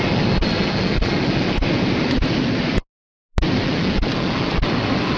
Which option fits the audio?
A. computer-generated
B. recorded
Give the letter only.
B